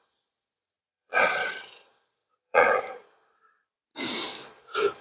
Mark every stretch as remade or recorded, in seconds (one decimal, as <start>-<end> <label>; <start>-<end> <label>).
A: 0.0-0.6 recorded; 0.6-1.6 remade; 1.6-2.2 recorded; 2.2-2.8 remade; 2.8-5.0 recorded